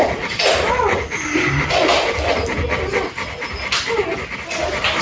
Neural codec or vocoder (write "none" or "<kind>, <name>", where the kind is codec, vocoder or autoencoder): none